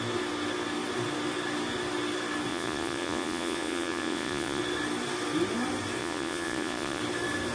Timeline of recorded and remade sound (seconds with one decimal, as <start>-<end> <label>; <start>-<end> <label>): 0.0-2.5 recorded; 2.5-4.6 remade; 4.6-6.0 recorded; 6.0-7.0 remade; 7.0-7.5 recorded